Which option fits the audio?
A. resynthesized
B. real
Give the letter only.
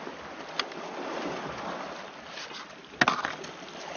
B